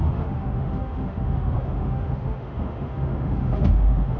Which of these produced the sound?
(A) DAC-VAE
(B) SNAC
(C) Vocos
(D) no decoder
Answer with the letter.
A